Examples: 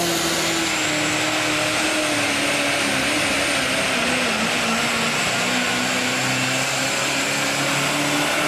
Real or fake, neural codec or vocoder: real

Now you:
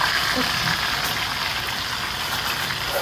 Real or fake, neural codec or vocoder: real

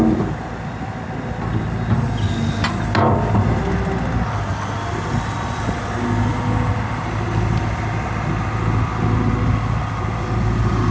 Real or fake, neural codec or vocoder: real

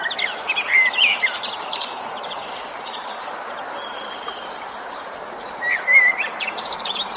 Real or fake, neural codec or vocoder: fake, vocoder, BigVGAN v2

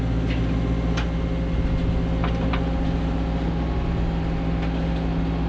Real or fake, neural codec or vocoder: real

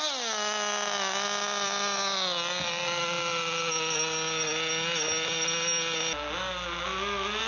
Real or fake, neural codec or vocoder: real